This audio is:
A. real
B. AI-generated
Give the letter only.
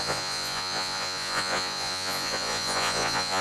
B